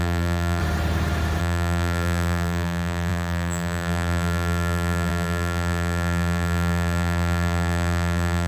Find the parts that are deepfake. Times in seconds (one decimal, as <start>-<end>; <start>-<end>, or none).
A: 0.0-0.6; 1.4-8.5